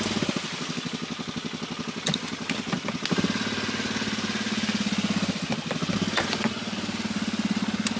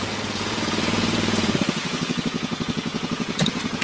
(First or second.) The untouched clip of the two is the first